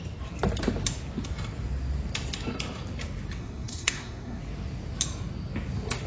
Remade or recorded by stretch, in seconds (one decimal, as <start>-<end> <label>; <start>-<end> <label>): 0.0-3.4 recorded; 3.4-4.4 remade; 4.4-6.1 recorded